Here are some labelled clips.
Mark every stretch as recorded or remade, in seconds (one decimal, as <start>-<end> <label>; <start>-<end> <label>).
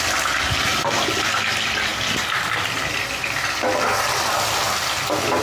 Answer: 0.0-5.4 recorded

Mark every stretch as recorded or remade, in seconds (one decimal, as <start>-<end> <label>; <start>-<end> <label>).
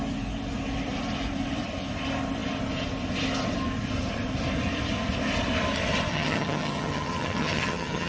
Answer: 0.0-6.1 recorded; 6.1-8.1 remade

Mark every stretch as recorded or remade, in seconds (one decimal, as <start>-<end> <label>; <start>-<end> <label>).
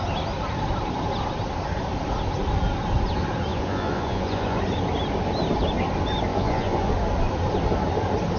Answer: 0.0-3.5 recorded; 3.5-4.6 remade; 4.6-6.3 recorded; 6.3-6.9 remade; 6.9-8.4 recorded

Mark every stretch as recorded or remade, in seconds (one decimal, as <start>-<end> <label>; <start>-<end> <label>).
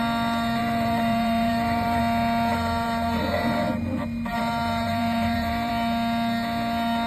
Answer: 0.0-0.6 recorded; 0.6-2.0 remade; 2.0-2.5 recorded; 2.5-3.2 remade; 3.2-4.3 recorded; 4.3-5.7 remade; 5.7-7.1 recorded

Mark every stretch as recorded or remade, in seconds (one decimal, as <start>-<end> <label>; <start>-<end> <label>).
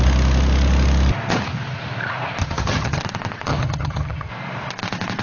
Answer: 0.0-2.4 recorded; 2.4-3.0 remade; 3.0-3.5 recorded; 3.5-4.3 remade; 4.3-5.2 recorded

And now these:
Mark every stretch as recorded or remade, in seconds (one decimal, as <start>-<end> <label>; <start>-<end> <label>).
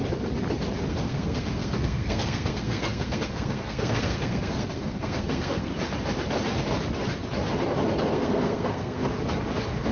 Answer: 0.0-0.9 recorded; 0.9-5.7 remade; 5.7-8.1 recorded; 8.1-9.0 remade; 9.0-9.9 recorded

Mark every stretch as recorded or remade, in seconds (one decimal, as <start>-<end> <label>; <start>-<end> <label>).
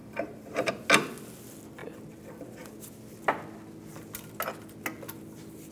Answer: 0.0-0.7 remade; 0.7-5.7 recorded